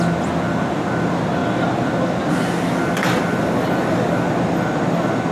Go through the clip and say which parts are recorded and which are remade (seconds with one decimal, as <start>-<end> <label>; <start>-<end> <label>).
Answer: 0.0-5.3 recorded